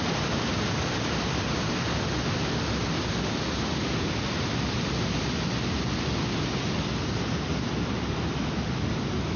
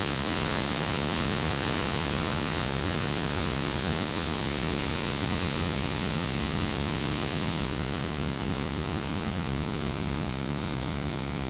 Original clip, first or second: first